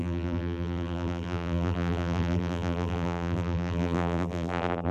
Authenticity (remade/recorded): remade